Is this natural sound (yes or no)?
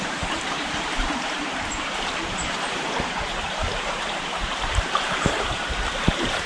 no